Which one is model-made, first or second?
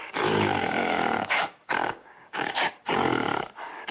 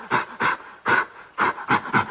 first